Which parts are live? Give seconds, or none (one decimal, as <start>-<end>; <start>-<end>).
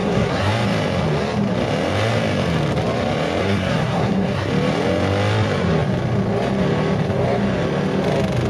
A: 0.5-3.4; 4.5-8.5